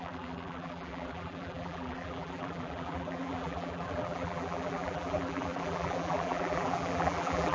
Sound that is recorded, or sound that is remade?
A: remade